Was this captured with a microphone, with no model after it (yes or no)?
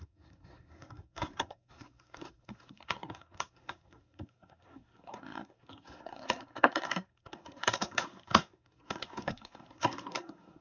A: no